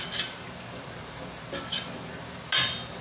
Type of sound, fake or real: real